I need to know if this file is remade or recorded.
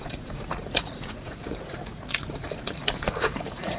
remade